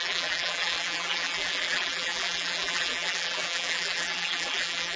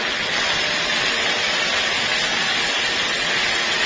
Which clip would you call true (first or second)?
second